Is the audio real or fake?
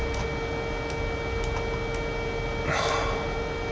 real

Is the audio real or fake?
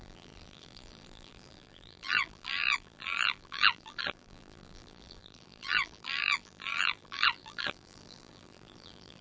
fake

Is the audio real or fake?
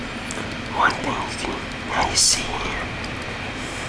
real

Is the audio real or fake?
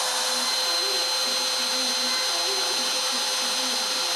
real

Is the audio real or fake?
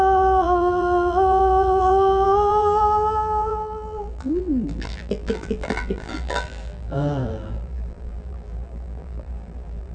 fake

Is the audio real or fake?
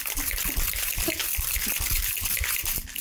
fake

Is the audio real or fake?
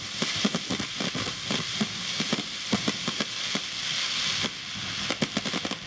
real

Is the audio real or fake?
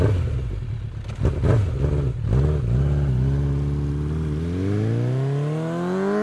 real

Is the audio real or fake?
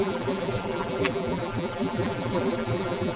fake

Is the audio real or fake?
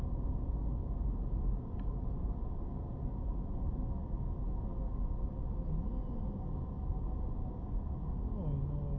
real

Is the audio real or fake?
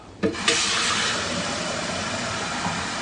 fake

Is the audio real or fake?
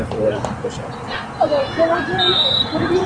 fake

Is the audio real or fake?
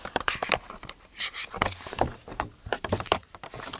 fake